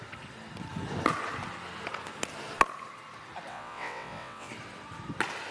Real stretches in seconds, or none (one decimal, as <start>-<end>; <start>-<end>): 0.0-3.5; 4.5-5.5